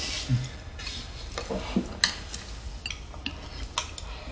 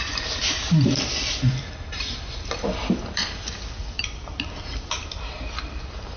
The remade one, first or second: second